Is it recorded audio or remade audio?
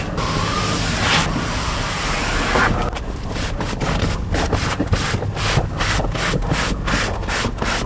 recorded